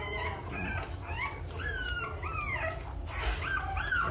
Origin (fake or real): real